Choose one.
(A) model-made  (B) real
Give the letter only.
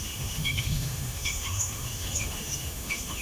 A